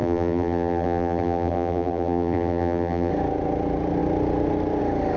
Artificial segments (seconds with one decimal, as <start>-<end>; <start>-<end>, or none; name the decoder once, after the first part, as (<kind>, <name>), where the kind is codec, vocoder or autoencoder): 0.0-3.1 (vocoder, BigVGAN v2)